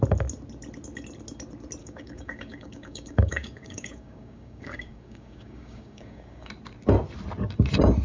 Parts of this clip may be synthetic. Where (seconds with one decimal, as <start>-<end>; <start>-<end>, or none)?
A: 1.8-6.5

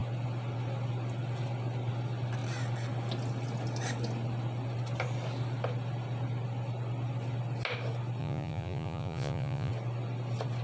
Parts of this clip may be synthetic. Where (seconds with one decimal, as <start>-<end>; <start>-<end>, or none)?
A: 8.2-9.7

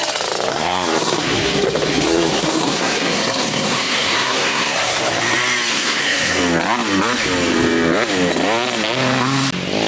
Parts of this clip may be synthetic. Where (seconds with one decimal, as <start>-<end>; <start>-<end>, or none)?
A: 0.5-5.0; 5.7-6.4

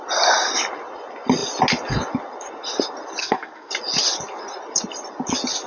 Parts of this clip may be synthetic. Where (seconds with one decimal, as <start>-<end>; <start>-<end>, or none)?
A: 3.2-3.7